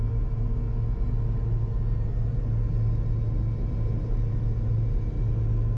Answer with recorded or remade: recorded